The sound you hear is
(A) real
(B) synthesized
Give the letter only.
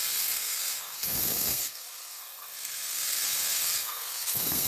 B